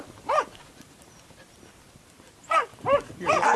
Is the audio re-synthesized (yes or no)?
yes